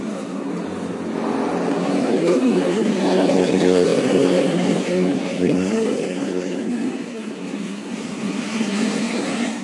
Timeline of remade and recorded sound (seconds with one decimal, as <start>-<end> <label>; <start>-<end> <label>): 0.0-0.5 remade; 0.5-1.7 recorded; 1.7-9.6 remade